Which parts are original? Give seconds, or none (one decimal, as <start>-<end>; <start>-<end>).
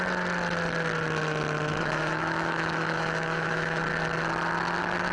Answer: 0.0-1.7; 3.8-5.1